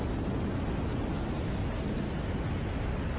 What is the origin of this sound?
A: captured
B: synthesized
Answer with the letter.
A